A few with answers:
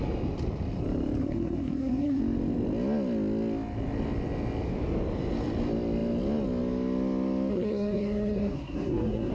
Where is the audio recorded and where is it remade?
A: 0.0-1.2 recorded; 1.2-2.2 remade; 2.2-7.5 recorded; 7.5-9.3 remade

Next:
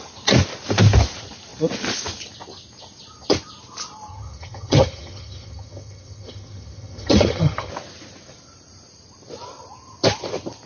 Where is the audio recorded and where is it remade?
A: 0.0-4.1 recorded; 4.1-7.7 remade; 7.7-10.7 recorded

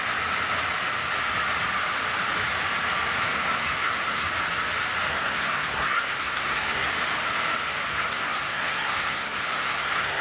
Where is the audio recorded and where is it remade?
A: 0.0-3.3 recorded; 3.3-4.3 remade; 4.3-5.1 recorded; 5.1-6.9 remade; 6.9-7.9 recorded; 7.9-10.2 remade

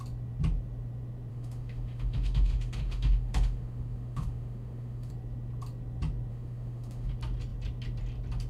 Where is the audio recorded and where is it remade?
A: 0.0-1.3 recorded; 1.3-5.1 remade; 5.1-6.3 recorded; 6.3-7.1 remade; 7.1-8.5 recorded

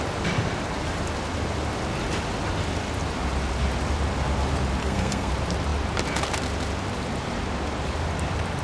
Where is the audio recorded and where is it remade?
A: 0.0-4.8 recorded; 4.8-5.3 remade; 5.3-8.6 recorded

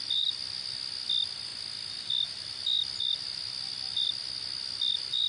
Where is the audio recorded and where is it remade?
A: 0.0-5.3 recorded